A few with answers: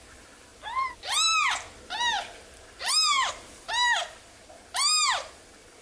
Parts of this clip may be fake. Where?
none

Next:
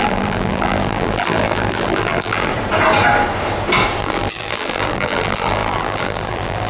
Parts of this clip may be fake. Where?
0.0-2.5 (vocoder, BigVGAN v2); 4.0-6.7

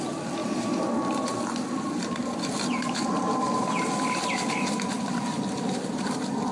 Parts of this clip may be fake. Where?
0.0-0.4 (vocoder, BigVGAN v2); 1.4-6.5

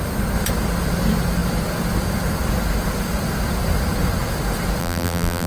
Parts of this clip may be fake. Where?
4.8-5.5 (vocoder, BigVGAN v2)